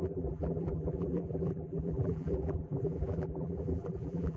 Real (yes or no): no